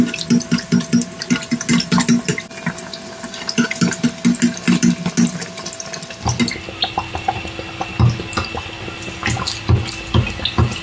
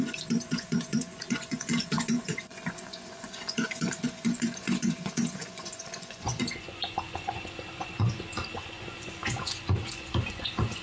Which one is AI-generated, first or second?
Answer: second